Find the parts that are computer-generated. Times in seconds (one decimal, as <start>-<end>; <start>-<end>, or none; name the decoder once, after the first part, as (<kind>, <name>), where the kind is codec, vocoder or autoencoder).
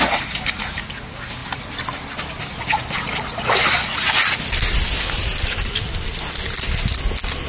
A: none